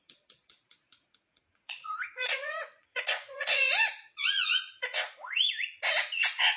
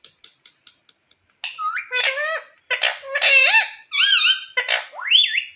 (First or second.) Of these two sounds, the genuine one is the second